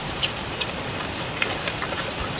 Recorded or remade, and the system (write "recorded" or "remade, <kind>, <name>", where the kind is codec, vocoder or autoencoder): remade, vocoder, BigVGAN v2